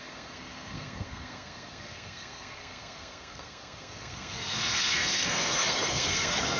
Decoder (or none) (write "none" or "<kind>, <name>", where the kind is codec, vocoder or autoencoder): codec, SNAC